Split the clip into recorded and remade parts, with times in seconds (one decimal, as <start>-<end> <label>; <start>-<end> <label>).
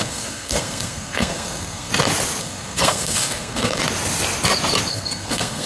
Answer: 0.0-1.9 remade; 1.9-2.4 recorded; 2.4-3.8 remade; 3.8-4.9 recorded; 4.9-5.7 remade